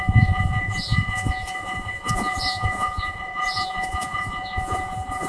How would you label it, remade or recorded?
remade